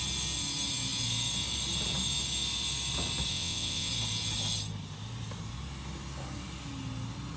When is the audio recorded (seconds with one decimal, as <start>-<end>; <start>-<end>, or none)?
0.0-3.3; 3.9-7.4